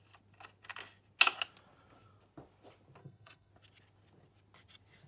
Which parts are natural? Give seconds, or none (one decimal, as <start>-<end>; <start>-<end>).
0.0-3.0; 3.5-5.1